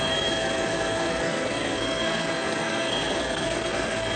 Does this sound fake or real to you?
fake